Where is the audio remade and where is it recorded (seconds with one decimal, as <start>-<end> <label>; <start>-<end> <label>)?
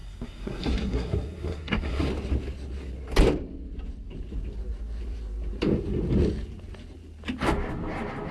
0.0-2.1 remade; 2.1-8.3 recorded